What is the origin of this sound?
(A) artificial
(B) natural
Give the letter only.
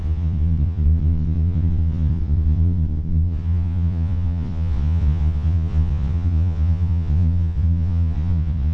A